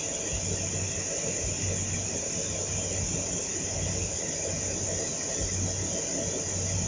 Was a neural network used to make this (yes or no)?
no